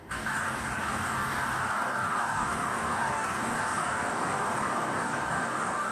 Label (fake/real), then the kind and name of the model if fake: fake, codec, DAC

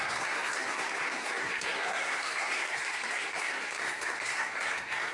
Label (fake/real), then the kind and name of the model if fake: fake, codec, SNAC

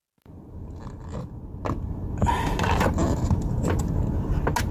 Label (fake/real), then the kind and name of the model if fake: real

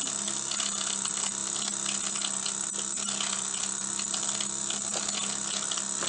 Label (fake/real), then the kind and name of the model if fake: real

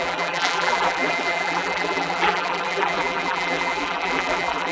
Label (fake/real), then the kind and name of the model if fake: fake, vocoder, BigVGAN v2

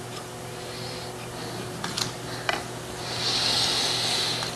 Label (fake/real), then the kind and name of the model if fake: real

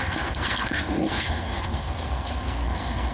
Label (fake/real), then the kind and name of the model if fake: fake, codec, SNAC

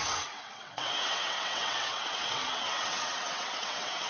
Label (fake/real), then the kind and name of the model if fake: fake, vocoder, WaveNeXt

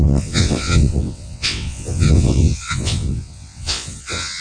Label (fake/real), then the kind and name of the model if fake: fake, vocoder, WaveNeXt